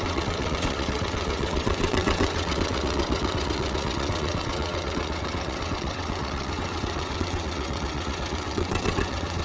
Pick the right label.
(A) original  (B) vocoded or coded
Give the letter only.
B